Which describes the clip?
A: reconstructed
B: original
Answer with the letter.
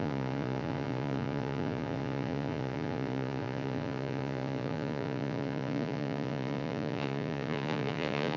A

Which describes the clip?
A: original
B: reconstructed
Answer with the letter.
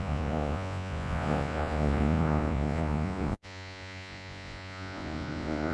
B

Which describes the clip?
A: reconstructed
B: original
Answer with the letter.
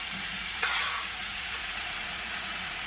A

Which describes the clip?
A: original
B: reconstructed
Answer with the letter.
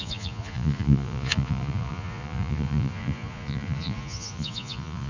B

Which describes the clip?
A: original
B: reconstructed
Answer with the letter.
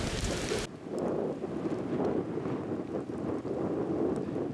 A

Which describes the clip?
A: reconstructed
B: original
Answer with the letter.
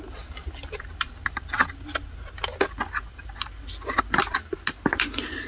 B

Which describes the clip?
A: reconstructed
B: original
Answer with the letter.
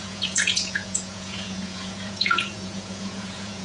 A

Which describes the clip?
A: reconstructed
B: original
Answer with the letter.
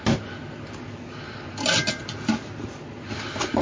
B